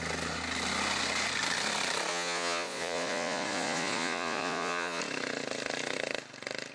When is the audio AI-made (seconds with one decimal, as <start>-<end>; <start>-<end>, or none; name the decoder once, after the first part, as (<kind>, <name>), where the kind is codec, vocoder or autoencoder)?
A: 2.1-5.0 (vocoder, Vocos)

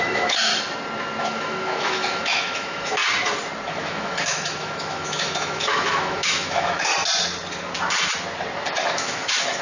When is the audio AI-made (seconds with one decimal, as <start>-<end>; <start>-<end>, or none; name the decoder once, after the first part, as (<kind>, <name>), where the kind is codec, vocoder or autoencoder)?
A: 0.0-0.5 (autoencoder, DAC-VAE); 1.2-3.0; 3.7-6.9; 8.8-9.6

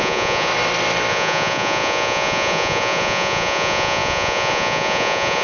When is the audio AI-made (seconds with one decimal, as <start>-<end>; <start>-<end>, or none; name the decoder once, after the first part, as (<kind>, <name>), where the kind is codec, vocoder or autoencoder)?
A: 0.0-0.5 (vocoder, Vocos); 1.1-5.4

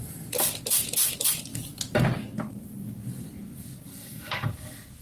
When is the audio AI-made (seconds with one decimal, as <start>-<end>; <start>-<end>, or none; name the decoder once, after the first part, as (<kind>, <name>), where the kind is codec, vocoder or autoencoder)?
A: 3.9-4.5 (codec, SNAC)